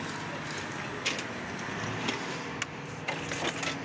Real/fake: real